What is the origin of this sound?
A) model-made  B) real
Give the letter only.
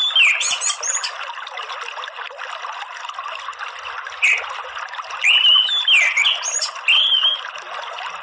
B